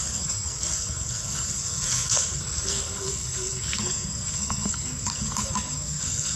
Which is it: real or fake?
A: fake